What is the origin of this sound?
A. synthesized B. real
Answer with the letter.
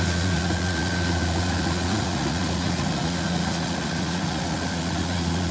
A